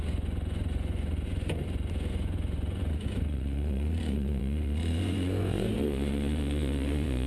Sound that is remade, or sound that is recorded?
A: remade